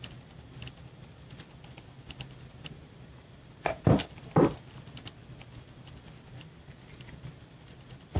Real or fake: real